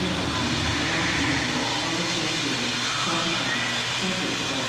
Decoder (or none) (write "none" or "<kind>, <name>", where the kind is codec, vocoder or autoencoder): none